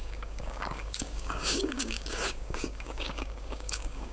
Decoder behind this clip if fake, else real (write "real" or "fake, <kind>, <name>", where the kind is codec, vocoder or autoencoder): fake, codec, DAC